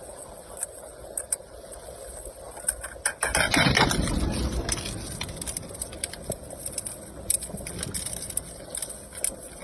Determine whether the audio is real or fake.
real